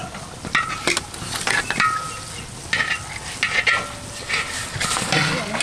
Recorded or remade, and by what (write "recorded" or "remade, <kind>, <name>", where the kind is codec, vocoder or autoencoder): recorded